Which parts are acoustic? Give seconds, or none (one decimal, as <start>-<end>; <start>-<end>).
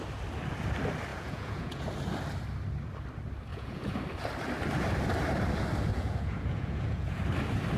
0.0-1.1; 1.9-3.5; 4.0-5.9; 7.2-7.8